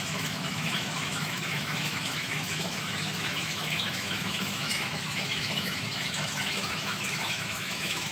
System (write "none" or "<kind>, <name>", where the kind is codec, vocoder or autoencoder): autoencoder, DAC-VAE